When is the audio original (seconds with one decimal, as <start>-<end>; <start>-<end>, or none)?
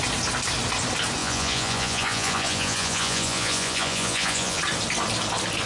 0.0-1.2; 4.6-5.7